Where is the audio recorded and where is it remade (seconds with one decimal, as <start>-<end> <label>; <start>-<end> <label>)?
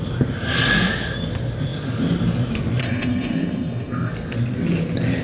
0.0-2.8 recorded; 2.8-4.1 remade; 4.1-5.2 recorded